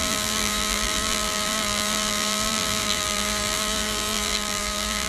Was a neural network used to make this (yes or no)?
yes